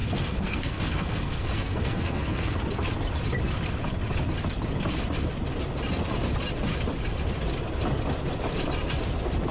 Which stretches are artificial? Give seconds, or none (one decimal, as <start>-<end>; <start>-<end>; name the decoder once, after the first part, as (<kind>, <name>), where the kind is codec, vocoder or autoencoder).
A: 0.0-2.6 (codec, SNAC)